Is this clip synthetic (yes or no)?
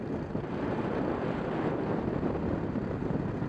no